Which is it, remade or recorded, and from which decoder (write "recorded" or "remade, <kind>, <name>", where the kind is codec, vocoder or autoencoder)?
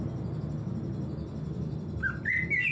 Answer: recorded